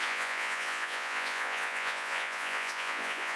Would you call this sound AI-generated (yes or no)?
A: yes